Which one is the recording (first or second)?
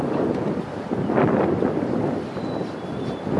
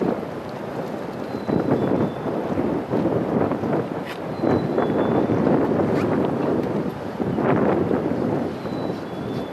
second